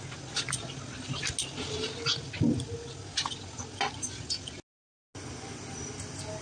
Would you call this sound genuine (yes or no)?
yes